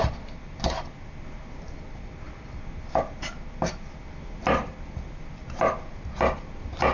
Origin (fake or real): real